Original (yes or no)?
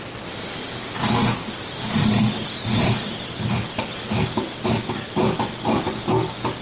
yes